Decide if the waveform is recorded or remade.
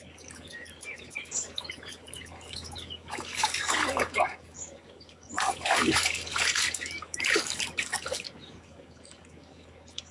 remade